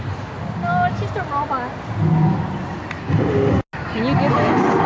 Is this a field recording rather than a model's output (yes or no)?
yes